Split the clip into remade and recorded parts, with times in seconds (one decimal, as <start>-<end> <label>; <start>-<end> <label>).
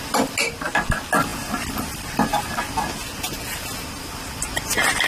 0.0-5.1 recorded